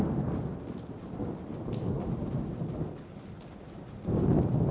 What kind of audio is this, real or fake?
real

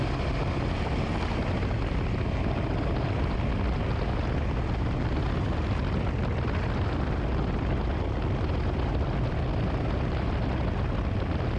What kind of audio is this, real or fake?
real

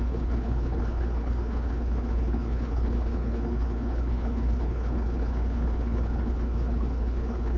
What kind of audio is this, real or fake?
fake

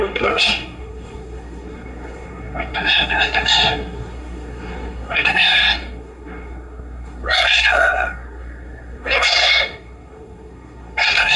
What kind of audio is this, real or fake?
fake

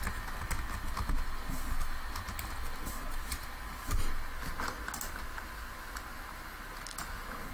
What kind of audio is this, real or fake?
real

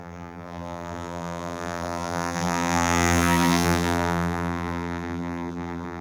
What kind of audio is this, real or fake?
fake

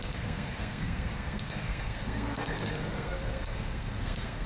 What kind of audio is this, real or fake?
fake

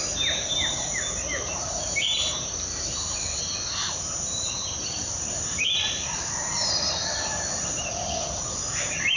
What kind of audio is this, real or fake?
fake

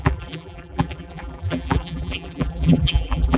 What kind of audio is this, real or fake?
fake